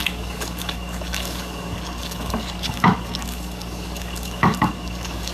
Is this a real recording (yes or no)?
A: no